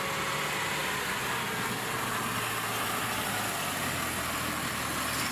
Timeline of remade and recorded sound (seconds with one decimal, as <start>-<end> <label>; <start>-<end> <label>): 0.0-5.3 recorded